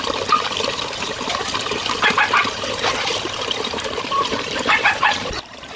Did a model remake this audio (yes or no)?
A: yes